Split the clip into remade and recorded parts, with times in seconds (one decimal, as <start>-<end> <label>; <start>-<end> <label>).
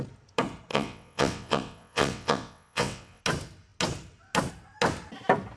0.0-0.7 recorded; 0.7-3.2 remade; 3.2-5.6 recorded